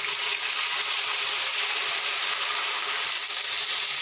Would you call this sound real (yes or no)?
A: yes